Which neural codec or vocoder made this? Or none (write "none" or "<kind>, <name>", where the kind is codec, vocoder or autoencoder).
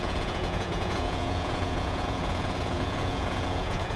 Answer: vocoder, Vocos